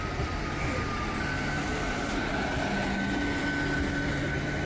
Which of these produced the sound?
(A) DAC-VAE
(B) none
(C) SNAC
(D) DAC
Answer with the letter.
B